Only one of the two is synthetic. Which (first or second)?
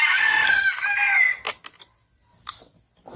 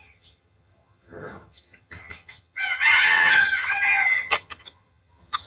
second